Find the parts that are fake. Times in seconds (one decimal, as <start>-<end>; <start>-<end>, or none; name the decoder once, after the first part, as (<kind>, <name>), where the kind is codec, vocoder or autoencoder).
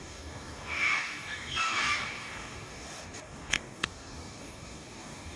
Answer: 0.0-5.4 (codec, DAC)